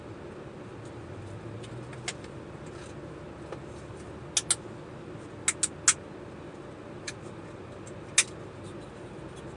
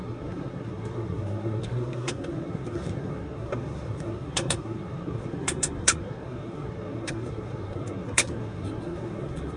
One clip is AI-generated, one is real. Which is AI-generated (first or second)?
second